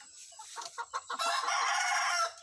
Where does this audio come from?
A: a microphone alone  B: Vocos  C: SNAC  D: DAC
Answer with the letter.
A